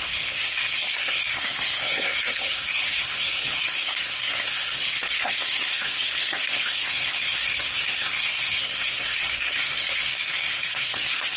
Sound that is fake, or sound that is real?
fake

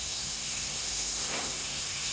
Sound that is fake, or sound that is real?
fake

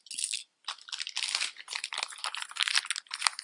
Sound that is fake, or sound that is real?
real